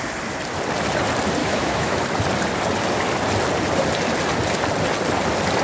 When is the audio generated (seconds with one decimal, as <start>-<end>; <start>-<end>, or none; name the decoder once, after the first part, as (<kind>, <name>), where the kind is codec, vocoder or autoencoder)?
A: 1.4-2.0 (autoencoder, DAC-VAE)